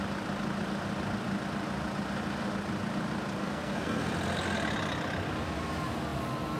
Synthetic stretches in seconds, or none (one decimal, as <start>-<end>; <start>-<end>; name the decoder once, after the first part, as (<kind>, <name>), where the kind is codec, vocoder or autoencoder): 3.4-4.1 (codec, SNAC)